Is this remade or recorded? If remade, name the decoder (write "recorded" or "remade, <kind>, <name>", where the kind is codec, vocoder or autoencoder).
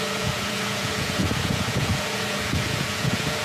remade, vocoder, Vocos